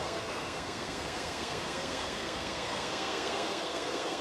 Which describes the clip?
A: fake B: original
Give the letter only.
A